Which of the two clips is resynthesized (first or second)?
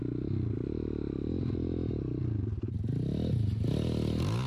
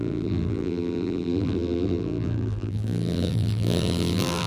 second